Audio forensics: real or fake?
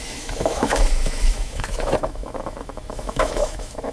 fake